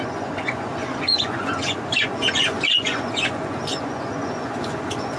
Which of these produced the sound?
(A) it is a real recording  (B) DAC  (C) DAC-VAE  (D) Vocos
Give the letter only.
D